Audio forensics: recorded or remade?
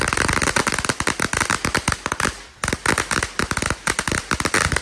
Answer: recorded